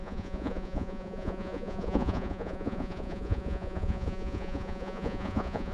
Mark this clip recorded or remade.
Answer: remade